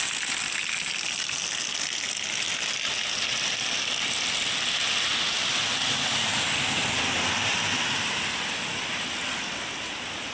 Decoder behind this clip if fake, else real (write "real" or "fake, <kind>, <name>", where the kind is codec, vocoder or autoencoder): real